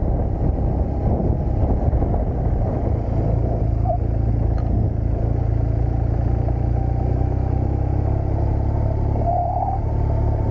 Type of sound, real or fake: real